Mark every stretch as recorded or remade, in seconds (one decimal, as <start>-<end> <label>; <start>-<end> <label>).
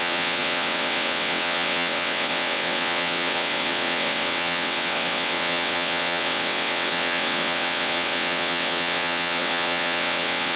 0.0-10.6 remade